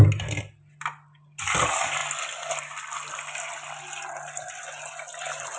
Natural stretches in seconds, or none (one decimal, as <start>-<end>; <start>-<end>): 0.0-5.6

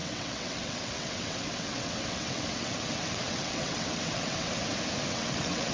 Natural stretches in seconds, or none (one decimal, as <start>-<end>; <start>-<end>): 4.6-5.1

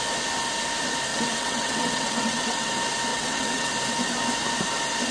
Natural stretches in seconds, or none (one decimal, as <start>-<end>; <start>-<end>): 0.0-1.1; 2.7-3.1; 3.7-5.1

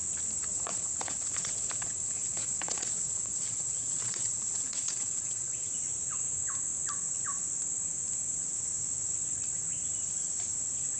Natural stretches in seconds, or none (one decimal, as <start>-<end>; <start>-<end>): 0.0-0.5; 5.7-11.0

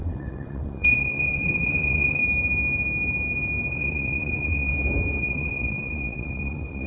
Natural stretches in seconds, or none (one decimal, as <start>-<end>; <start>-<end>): 2.2-3.7; 4.7-5.2